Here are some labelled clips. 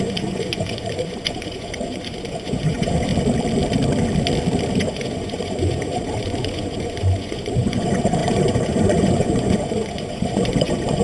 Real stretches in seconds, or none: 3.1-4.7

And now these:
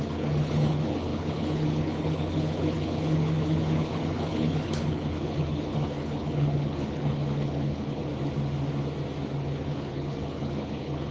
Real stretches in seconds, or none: 8.1-9.4

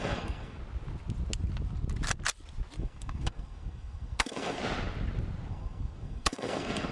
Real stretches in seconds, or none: 0.6-2.8; 4.6-5.5

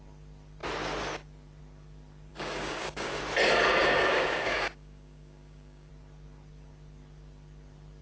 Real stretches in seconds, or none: 0.0-2.3; 3.2-3.8; 5.9-8.0

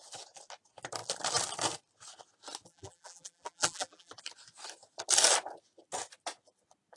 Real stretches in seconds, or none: 0.0-2.7; 4.1-7.0